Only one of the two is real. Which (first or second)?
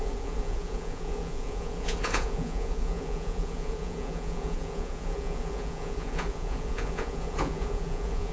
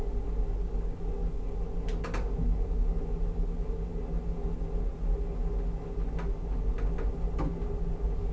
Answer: second